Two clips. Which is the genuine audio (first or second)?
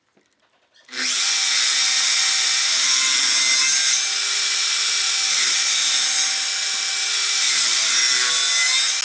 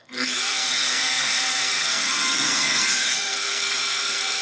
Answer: first